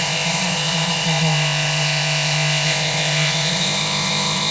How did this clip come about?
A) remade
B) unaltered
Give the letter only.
A